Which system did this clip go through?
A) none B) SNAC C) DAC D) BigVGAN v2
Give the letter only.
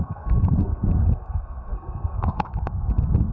B